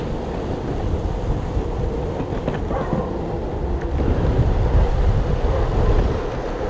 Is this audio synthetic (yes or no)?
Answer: no